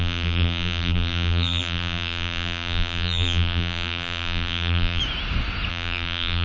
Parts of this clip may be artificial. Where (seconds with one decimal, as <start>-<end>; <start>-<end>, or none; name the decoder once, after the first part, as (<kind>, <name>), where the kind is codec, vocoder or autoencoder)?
0.0-5.0 (vocoder, BigVGAN v2); 5.7-6.4